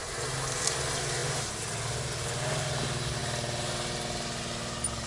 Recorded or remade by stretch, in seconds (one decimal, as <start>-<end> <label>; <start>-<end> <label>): 0.0-5.1 recorded